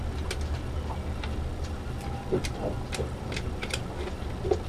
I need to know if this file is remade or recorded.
recorded